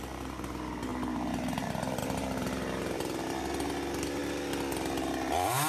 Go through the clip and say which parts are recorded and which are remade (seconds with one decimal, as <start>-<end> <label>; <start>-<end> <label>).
0.0-0.9 recorded; 0.9-1.4 remade; 1.4-2.0 recorded; 2.0-3.4 remade; 3.4-5.7 recorded